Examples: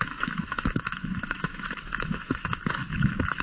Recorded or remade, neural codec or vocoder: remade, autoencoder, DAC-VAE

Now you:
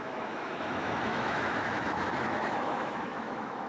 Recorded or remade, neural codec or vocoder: remade, autoencoder, DAC-VAE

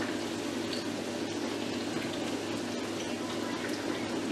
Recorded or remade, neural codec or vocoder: recorded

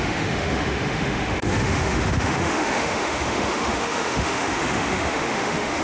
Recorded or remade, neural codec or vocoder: remade, autoencoder, DAC-VAE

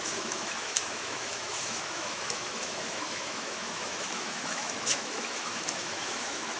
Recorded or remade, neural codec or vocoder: remade, autoencoder, DAC-VAE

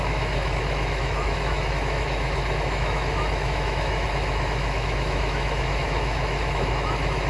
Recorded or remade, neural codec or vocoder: remade, autoencoder, DAC-VAE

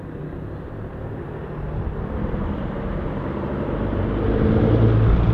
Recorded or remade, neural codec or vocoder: recorded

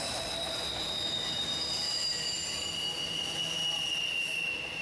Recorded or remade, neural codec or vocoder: recorded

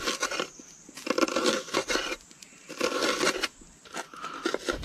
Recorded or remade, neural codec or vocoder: recorded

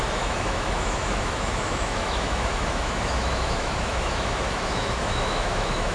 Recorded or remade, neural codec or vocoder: remade, autoencoder, DAC-VAE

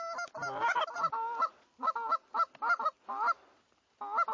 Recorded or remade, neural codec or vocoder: recorded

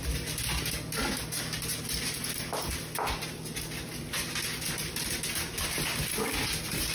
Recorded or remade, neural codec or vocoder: recorded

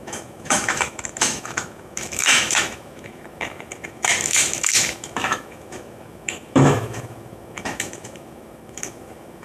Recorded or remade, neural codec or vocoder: remade, autoencoder, DAC-VAE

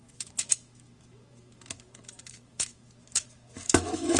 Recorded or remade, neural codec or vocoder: remade, autoencoder, DAC-VAE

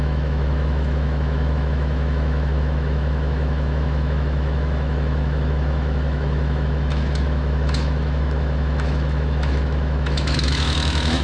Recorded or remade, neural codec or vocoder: remade, autoencoder, DAC-VAE